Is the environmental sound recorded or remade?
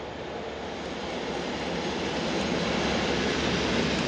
recorded